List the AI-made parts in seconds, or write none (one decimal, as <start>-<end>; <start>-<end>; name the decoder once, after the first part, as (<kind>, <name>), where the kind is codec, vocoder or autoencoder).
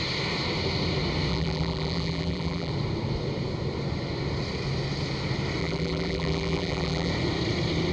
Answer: 1.3-2.7 (vocoder, BigVGAN v2); 5.6-7.1